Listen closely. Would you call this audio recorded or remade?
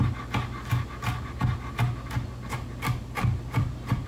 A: recorded